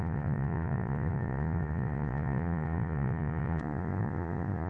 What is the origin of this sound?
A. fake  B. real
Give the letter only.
A